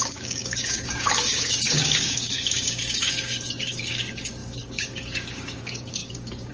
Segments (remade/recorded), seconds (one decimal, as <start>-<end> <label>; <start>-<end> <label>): 0.0-6.5 remade